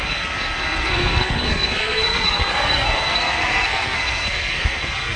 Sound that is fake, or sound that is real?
fake